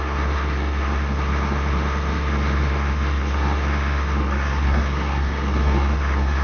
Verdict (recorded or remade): remade